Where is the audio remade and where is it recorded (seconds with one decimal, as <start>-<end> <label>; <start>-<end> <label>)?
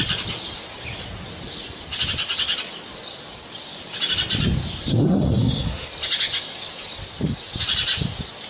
0.0-4.9 recorded; 4.9-5.9 remade; 5.9-8.5 recorded